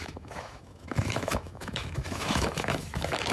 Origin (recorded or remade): remade